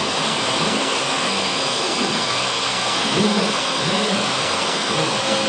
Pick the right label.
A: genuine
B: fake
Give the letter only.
B